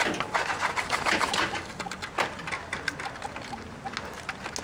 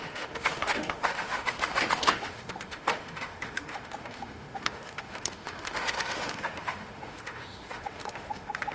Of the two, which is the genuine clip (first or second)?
first